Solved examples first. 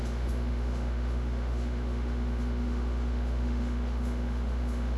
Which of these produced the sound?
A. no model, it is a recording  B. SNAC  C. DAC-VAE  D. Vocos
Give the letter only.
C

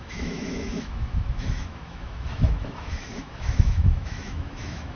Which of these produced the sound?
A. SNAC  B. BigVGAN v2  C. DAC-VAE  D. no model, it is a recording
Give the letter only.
C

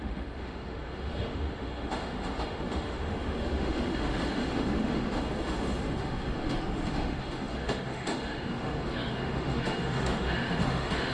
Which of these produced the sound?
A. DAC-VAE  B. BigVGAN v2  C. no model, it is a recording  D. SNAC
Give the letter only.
A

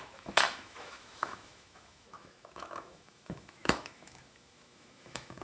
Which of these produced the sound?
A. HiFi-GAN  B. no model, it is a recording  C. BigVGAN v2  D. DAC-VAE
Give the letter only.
D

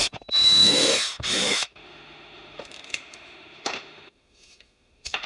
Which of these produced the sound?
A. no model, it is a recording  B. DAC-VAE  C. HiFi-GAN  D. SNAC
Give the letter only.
B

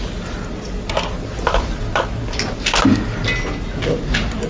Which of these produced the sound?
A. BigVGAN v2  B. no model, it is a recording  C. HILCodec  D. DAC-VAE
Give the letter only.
B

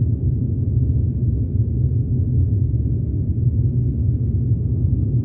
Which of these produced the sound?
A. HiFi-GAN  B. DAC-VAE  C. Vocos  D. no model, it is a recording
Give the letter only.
B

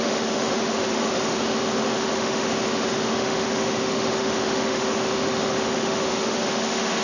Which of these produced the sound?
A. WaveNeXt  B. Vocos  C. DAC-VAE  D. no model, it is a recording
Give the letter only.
C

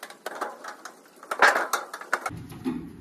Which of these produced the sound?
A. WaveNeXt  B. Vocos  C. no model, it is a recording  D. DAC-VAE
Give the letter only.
C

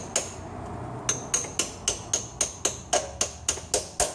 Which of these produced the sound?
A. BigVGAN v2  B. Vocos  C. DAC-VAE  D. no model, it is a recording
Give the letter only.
D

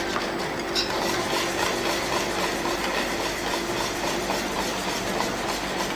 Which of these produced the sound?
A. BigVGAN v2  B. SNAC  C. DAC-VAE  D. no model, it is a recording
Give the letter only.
D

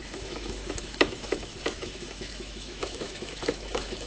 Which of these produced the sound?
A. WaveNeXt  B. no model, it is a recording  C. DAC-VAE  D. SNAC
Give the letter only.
C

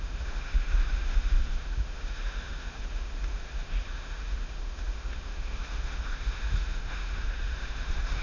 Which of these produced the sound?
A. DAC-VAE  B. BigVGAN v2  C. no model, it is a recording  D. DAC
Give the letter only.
A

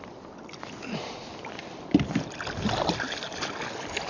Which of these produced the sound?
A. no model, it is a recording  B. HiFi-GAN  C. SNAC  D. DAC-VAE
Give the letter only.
A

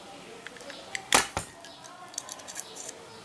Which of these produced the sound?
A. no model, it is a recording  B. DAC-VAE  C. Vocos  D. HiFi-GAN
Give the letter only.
A